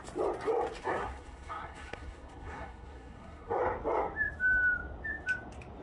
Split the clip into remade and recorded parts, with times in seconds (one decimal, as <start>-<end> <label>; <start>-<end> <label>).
0.0-0.8 recorded; 0.8-3.6 remade; 3.6-5.8 recorded